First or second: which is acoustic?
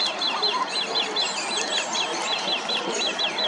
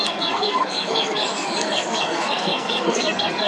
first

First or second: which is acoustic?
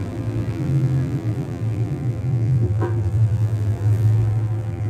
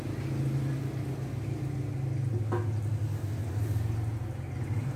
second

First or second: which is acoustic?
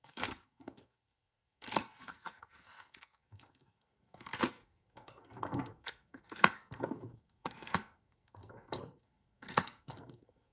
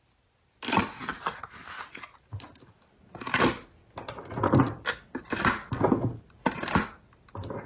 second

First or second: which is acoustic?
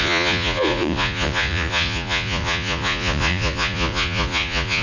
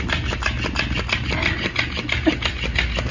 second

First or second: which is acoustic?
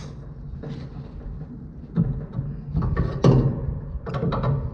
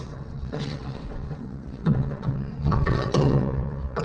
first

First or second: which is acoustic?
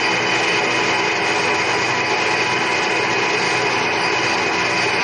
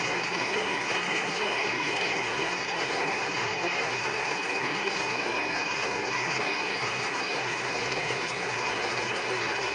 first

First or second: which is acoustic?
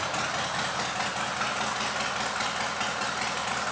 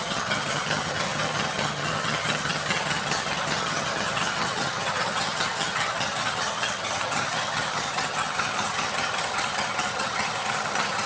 first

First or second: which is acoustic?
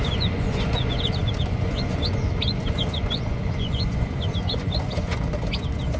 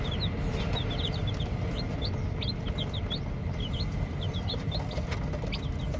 second